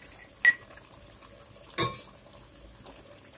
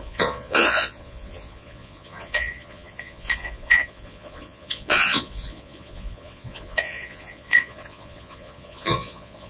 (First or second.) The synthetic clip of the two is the second